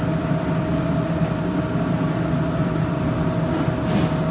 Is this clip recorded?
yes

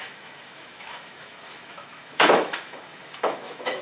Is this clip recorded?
no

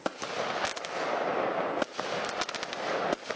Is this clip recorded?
yes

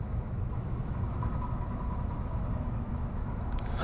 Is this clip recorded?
no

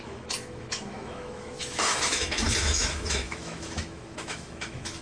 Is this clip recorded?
no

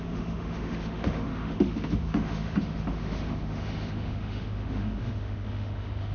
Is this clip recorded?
no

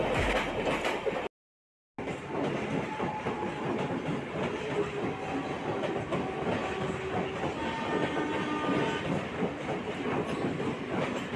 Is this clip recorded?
yes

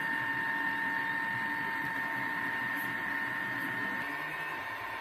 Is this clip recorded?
yes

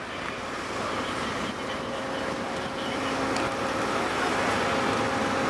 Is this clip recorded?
yes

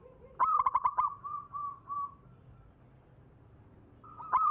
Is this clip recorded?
yes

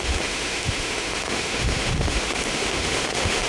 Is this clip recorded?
no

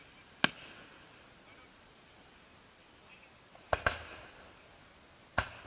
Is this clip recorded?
yes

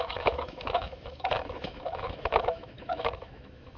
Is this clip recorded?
no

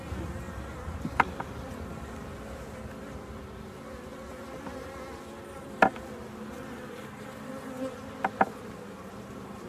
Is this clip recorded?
yes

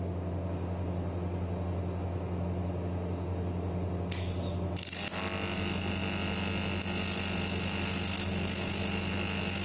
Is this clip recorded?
yes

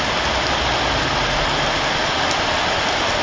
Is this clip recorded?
yes